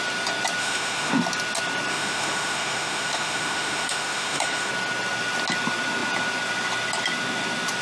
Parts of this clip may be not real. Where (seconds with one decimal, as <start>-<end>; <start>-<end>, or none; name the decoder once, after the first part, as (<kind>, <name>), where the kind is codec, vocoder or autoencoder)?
0.6-1.1 (autoencoder, DAC-VAE); 1.9-4.7